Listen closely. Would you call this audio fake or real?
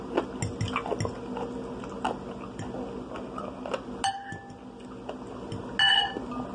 real